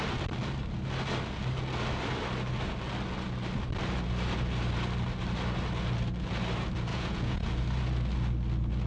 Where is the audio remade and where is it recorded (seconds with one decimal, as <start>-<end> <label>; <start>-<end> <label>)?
0.0-6.9 recorded; 6.9-7.5 remade; 7.5-8.9 recorded